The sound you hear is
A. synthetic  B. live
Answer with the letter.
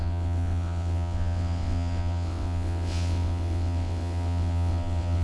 A